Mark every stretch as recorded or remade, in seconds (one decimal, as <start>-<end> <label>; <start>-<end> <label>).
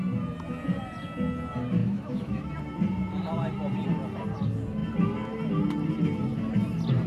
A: 0.0-1.8 recorded; 1.8-2.5 remade; 2.5-7.1 recorded